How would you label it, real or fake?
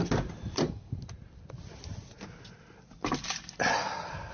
real